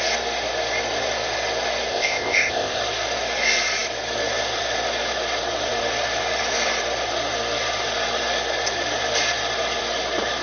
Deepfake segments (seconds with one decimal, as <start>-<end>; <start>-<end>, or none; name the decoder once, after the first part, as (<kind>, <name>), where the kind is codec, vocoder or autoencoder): 1.9-2.8 (codec, ZipCodec)